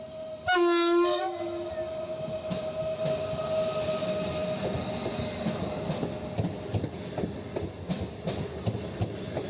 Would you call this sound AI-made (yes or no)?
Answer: no